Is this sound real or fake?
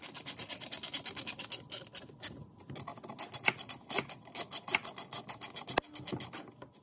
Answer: real